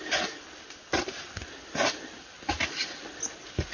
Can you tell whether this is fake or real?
real